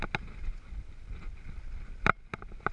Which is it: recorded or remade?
recorded